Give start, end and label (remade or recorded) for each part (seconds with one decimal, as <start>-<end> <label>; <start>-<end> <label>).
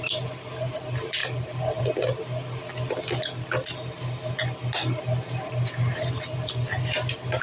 0.0-7.4 recorded